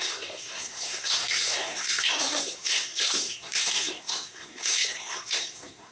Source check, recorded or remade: remade